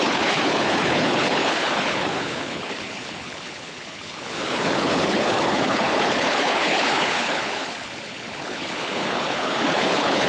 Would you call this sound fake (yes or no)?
yes